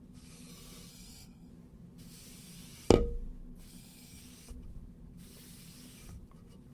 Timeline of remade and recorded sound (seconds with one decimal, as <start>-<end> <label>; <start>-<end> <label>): 0.0-0.9 recorded; 0.9-1.5 remade; 1.5-3.7 recorded; 3.7-4.2 remade; 4.2-6.7 recorded